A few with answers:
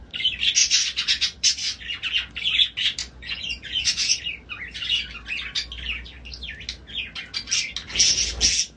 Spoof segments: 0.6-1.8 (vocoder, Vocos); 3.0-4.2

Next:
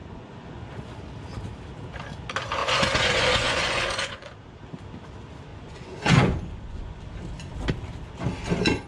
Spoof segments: 0.0-1.0 (vocoder, Vocos); 2.6-4.3; 5.5-7.0

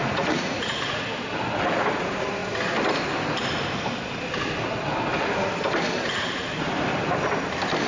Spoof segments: 0.0-1.0 (vocoder, Vocos)

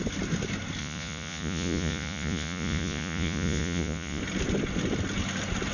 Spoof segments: 0.8-4.2 (vocoder, Vocos)